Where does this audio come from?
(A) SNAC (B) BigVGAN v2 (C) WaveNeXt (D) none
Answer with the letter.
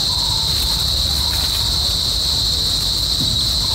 B